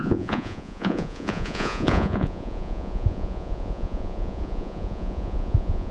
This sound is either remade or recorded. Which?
remade